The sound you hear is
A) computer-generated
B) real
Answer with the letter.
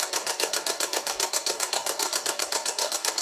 A